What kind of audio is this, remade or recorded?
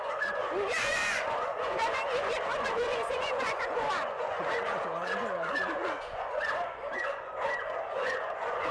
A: remade